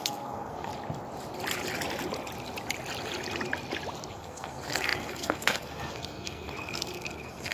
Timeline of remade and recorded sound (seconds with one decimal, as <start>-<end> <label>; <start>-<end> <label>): 0.0-0.7 remade; 0.7-4.1 recorded; 4.1-7.5 remade